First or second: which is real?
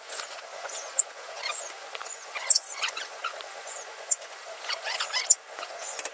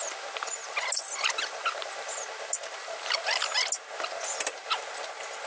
second